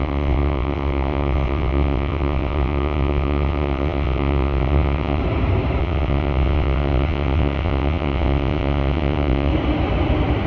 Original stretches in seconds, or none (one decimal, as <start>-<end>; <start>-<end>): 5.2-5.8; 9.5-10.5